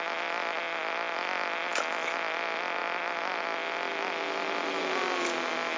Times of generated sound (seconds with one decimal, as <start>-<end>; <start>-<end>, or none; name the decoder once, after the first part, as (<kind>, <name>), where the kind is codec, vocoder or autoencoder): none